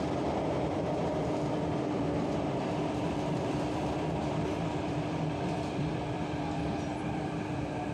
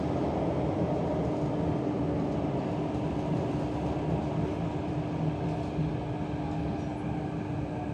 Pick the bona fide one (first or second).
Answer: second